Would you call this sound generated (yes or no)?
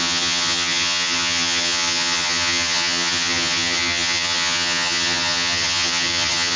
yes